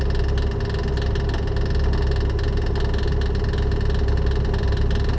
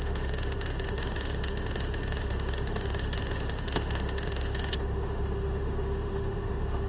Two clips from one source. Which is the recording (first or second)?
first